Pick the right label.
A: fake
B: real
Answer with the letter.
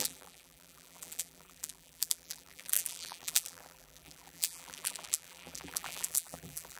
A